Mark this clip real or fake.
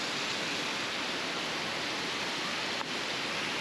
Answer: real